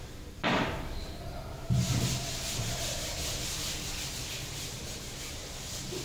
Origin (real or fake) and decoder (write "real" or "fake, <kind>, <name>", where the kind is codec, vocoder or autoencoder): real